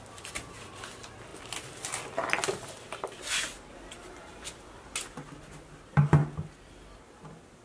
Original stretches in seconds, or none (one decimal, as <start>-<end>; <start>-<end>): 0.0-7.6